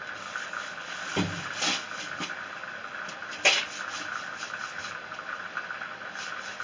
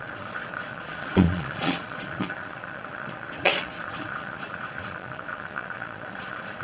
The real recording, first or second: first